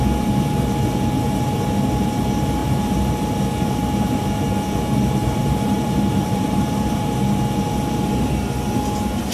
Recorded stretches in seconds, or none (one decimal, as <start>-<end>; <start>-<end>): 0.0-2.6; 3.3-5.2; 7.0-9.3